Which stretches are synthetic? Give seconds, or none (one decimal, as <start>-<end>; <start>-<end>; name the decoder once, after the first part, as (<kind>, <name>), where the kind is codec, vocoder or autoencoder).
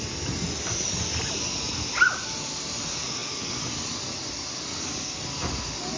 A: none